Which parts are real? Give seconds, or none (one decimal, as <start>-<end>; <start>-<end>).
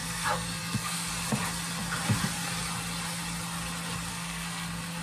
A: 1.1-4.1